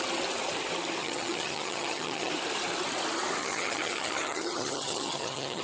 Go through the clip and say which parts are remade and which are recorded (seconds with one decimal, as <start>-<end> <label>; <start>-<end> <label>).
0.0-1.0 recorded; 1.0-2.3 remade; 2.3-3.4 recorded; 3.4-5.6 remade